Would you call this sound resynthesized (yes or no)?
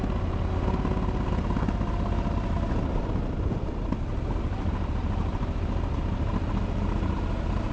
no